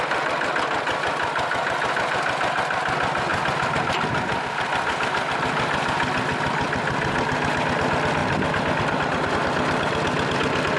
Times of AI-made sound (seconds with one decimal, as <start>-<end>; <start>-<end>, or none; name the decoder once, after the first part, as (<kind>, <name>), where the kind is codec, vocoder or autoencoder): none

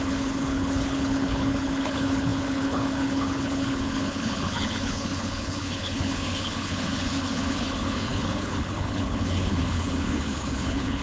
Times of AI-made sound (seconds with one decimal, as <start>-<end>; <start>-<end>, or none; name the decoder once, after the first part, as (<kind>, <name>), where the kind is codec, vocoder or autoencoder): 0.0-11.0 (codec, HILCodec)

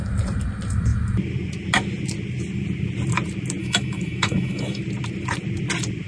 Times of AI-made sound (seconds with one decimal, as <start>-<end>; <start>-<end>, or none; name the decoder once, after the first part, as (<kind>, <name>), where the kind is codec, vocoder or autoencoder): 3.6-4.8 (autoencoder, DAC-VAE)

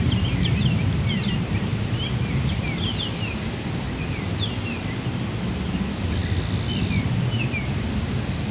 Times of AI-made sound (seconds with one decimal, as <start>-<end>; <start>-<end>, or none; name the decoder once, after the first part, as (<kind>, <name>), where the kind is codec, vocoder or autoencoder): none

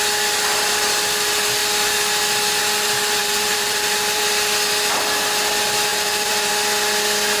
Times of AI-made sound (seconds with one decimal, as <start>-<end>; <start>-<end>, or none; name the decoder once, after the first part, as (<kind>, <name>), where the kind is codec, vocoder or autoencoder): 3.2-4.2 (vocoder, BigVGAN v2); 5.9-6.5

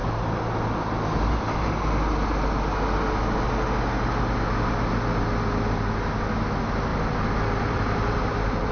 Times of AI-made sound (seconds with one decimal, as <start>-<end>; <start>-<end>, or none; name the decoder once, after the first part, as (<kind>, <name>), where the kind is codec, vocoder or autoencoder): 6.9-8.7 (vocoder, BigVGAN v2)

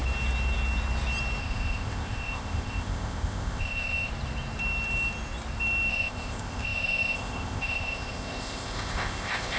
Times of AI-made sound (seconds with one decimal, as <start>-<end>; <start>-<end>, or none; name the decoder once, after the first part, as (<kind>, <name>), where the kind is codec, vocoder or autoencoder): 1.4-4.1 (codec, ZipCodec); 5.9-9.6